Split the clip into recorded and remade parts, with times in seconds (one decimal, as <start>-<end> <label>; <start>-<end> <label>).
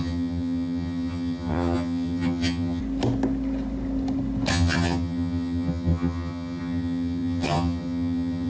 0.0-2.8 remade; 2.8-4.5 recorded; 4.5-8.5 remade